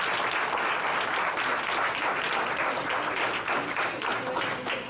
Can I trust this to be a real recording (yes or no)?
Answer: yes